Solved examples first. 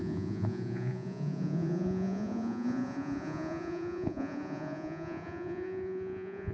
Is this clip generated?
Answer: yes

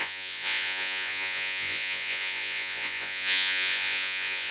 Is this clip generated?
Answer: yes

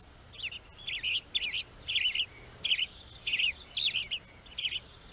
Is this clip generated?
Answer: no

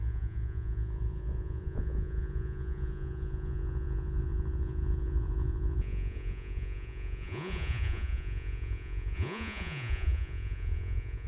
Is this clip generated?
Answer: yes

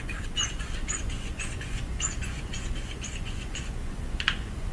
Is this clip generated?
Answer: yes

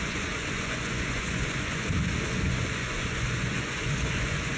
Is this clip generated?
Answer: yes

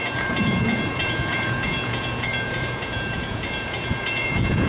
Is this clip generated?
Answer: yes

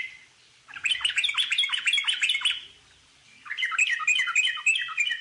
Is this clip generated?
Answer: no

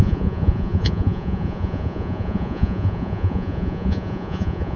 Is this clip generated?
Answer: yes